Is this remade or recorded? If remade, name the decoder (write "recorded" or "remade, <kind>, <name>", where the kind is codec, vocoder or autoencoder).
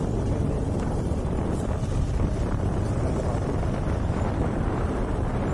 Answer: remade, vocoder, BigVGAN v2